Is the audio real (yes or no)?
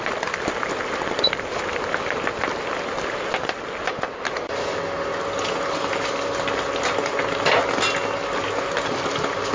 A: yes